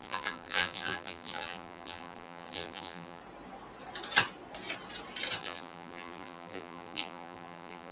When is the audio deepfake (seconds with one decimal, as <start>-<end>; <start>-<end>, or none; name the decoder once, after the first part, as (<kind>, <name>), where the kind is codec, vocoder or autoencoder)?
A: 0.0-3.2 (vocoder, BigVGAN v2); 5.4-7.9

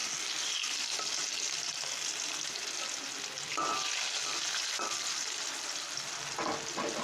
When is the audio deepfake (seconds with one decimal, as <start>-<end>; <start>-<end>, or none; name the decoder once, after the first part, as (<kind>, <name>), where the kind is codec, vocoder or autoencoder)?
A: none

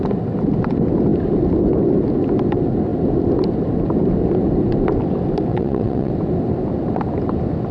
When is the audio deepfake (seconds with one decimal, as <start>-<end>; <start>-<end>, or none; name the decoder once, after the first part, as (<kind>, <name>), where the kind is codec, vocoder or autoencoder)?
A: 5.5-6.1 (vocoder, WaveNeXt)

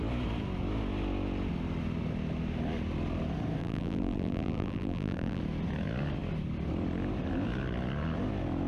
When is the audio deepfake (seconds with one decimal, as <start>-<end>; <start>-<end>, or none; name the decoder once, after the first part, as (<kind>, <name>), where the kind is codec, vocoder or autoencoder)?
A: 3.6-5.4 (vocoder, BigVGAN v2)

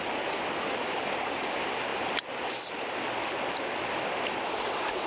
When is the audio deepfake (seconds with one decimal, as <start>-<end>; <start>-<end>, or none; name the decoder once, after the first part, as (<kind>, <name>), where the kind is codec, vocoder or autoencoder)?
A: none

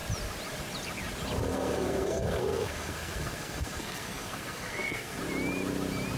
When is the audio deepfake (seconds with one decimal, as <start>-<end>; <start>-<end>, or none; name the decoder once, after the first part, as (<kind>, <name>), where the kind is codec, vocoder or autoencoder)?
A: 1.5-5.2 (codec, SNAC)

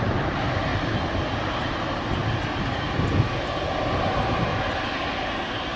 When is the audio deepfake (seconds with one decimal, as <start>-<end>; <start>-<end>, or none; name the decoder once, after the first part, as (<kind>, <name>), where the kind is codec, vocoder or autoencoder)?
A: 0.0-0.7 (vocoder, BigVGAN v2); 1.6-2.2; 3.5-4.5

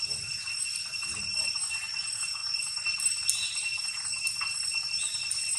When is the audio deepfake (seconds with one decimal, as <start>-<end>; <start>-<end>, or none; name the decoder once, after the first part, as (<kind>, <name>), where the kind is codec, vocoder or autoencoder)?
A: none